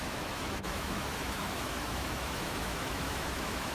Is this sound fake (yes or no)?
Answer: yes